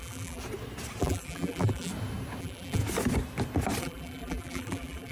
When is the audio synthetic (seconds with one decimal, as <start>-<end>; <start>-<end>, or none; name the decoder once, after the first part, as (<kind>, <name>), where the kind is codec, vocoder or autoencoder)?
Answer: 0.0-0.4 (vocoder, BigVGAN v2); 1.0-1.9; 2.4-2.8; 3.8-5.1